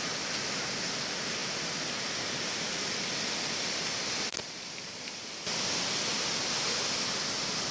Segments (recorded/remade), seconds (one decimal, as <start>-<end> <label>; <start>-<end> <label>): 0.0-3.9 recorded; 3.9-5.6 remade; 5.6-7.7 recorded